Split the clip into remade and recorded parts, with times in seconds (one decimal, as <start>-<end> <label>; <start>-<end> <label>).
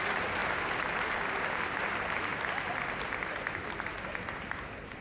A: 0.0-5.0 recorded